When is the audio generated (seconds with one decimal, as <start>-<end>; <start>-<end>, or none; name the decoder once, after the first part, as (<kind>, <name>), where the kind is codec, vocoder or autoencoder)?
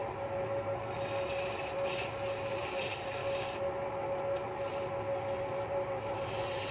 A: 2.5-3.2 (vocoder, BigVGAN v2); 5.5-6.7